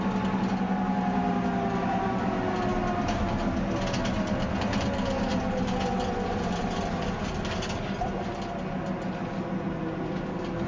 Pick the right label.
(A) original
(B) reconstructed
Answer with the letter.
A